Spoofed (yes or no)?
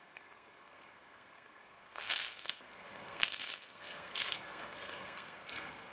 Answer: yes